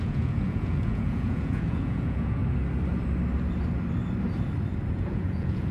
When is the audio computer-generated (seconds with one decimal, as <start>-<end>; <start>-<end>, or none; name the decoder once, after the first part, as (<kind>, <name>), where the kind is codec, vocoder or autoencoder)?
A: 0.0-2.4 (vocoder, Vocos); 4.9-5.7